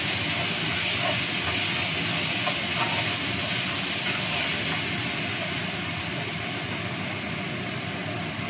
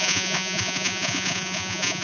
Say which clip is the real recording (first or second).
first